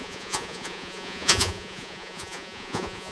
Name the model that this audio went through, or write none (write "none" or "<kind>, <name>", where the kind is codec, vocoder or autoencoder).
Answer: vocoder, Vocos